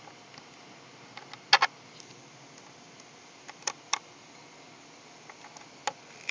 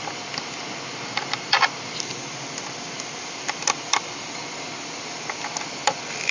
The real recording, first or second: first